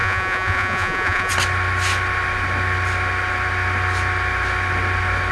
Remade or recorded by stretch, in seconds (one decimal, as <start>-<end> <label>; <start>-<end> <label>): 0.0-1.3 remade; 1.3-5.3 recorded

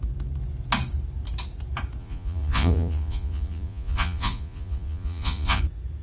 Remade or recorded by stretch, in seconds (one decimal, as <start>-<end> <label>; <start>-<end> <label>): 0.0-2.0 recorded; 2.0-5.6 remade; 5.6-6.0 recorded

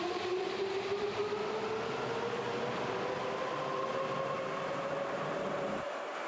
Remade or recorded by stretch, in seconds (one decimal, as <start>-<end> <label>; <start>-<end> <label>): 0.0-1.2 remade; 1.2-5.0 recorded; 5.0-6.3 remade

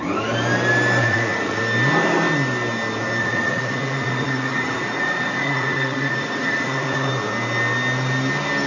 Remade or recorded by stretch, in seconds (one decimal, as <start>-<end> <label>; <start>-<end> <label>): 0.0-1.0 recorded; 1.0-1.6 remade; 1.6-3.2 recorded; 3.2-7.1 remade; 7.1-8.7 recorded